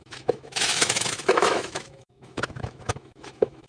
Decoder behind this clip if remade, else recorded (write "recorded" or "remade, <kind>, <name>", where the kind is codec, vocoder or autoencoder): remade, autoencoder, DAC-VAE